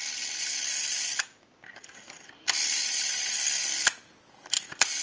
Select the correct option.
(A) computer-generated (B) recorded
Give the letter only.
B